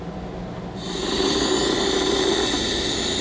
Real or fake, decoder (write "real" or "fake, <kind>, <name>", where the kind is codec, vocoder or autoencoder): real